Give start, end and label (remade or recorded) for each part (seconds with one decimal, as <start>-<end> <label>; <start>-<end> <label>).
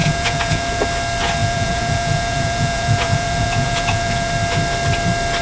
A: 0.0-0.8 remade; 0.8-1.4 recorded; 1.4-4.3 remade; 4.3-5.4 recorded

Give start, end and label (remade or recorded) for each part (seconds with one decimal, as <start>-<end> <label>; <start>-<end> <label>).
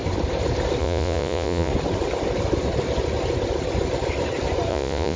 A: 0.0-0.8 recorded; 0.8-1.7 remade; 1.7-4.7 recorded; 4.7-5.2 remade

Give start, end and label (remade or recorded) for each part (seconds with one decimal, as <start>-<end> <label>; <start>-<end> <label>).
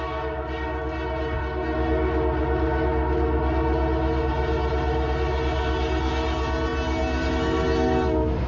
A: 0.0-8.5 recorded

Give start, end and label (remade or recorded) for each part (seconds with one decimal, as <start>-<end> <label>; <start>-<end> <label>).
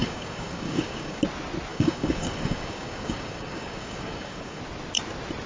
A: 0.0-1.2 remade; 1.2-1.7 recorded; 1.7-4.6 remade; 4.6-5.5 recorded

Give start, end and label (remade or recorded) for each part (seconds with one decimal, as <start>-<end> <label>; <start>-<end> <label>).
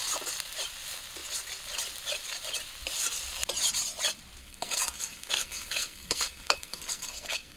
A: 0.0-4.4 recorded; 4.4-7.6 remade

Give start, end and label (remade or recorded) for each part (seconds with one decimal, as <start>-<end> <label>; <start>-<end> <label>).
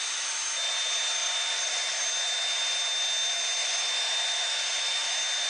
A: 0.0-1.2 recorded; 1.2-1.8 remade; 1.8-3.6 recorded; 3.6-4.7 remade; 4.7-5.5 recorded